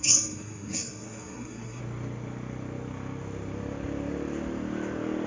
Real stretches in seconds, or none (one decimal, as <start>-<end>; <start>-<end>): 1.8-5.3